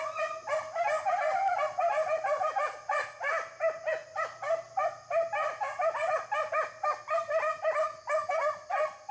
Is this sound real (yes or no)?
yes